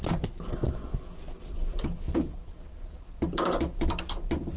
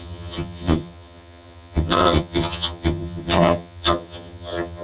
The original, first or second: first